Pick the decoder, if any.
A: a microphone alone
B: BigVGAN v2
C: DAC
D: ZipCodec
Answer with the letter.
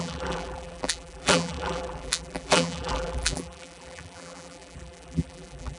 B